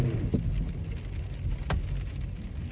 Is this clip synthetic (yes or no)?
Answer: no